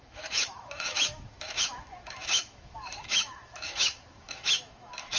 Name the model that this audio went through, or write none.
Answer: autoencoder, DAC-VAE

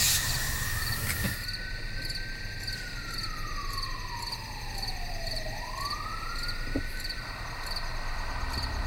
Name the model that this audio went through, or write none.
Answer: none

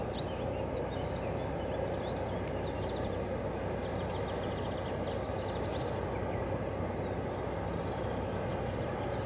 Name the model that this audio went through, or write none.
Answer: none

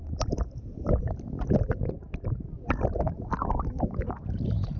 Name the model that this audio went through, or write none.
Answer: none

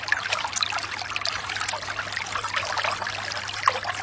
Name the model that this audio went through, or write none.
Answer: none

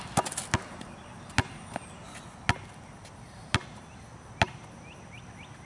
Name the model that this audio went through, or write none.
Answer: none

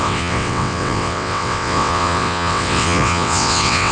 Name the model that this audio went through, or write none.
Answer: vocoder, WaveNeXt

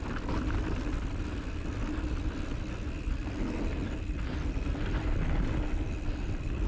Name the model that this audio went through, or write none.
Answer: none